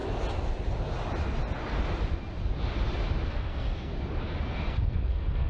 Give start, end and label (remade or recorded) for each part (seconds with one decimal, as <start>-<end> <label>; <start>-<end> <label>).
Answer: 0.0-3.3 recorded; 3.3-3.9 remade; 3.9-4.5 recorded; 4.5-5.5 remade

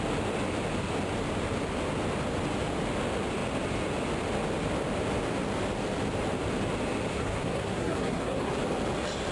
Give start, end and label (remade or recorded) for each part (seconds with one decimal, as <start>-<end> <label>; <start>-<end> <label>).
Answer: 0.0-7.1 recorded; 7.1-8.5 remade; 8.5-9.3 recorded